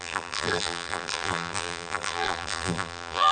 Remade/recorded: remade